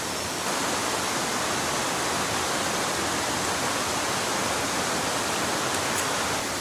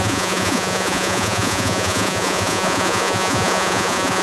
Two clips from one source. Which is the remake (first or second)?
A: second